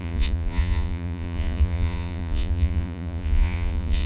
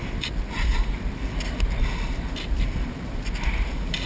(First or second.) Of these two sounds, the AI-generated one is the first